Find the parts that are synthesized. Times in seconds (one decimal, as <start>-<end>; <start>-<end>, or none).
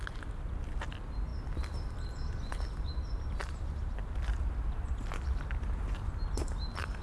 none